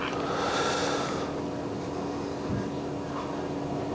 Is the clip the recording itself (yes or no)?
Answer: yes